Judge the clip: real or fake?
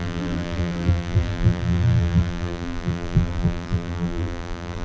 fake